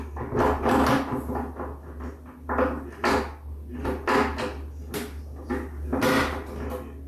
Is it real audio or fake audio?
real